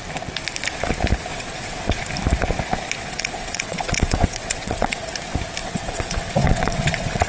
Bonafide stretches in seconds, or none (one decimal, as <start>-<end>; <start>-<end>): 0.0-1.3; 2.0-3.0; 5.1-5.6